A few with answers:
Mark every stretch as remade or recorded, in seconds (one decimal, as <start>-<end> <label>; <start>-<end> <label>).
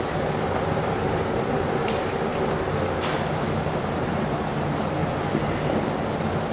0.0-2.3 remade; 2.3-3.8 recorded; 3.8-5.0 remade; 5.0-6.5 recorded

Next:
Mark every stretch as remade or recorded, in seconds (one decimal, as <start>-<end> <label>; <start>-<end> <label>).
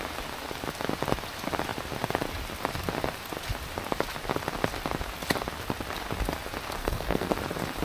0.0-6.8 recorded; 6.8-7.3 remade; 7.3-7.8 recorded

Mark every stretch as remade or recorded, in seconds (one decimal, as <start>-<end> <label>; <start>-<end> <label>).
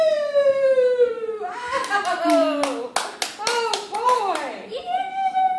0.0-2.4 remade; 2.4-3.8 recorded; 3.8-5.6 remade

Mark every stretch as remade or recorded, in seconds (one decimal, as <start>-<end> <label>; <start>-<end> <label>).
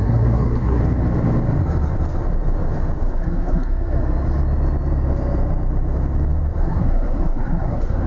0.0-0.8 remade; 0.8-3.1 recorded; 3.1-4.0 remade; 4.0-6.6 recorded; 6.6-8.1 remade